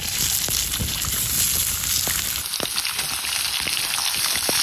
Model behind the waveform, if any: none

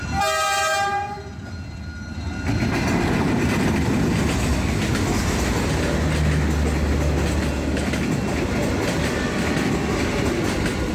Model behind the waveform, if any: none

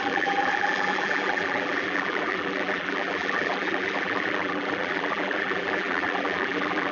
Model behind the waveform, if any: vocoder, BigVGAN v2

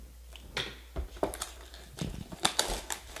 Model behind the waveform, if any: none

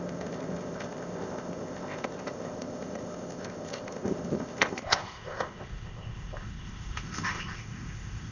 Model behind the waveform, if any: codec, ZipCodec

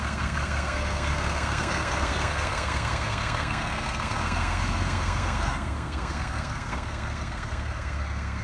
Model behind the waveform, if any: codec, SNAC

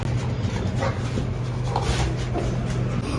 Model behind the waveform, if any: none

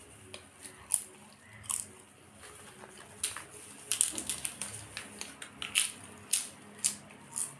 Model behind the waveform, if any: none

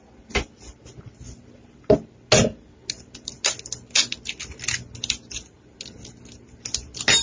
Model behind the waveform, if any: none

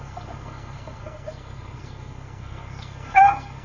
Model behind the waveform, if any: codec, SNAC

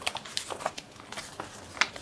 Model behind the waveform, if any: none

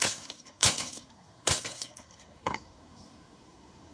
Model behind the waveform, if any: codec, SNAC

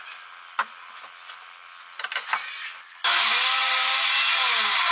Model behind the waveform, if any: none